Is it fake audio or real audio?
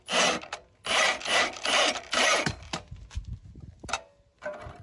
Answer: real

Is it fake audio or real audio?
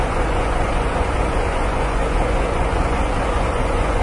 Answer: fake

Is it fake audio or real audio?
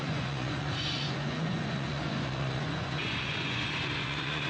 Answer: fake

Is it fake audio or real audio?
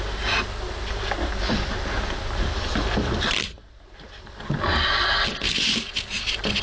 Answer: real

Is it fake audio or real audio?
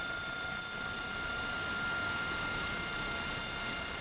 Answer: real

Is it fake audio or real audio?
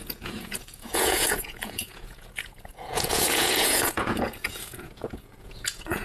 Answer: fake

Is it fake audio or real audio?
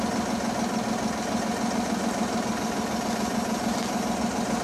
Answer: real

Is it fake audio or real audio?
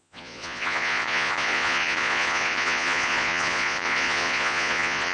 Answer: fake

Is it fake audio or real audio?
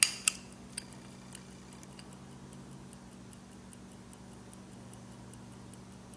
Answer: real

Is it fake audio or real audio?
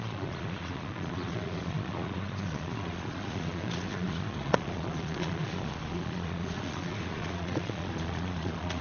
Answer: fake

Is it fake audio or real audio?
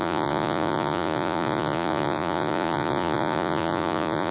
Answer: fake